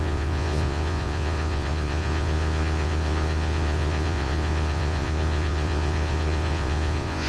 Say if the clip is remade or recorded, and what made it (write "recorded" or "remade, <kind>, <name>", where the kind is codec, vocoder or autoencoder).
remade, vocoder, Vocos